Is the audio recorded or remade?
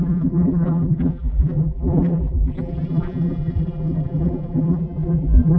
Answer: remade